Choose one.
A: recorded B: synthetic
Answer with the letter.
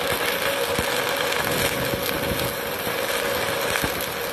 A